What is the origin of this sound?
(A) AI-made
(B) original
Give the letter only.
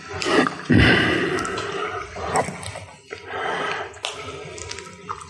B